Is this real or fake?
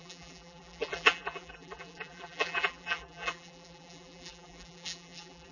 fake